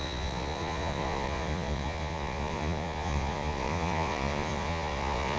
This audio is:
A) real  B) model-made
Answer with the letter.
B